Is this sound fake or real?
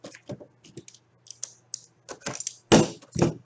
real